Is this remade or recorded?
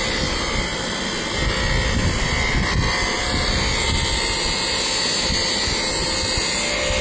recorded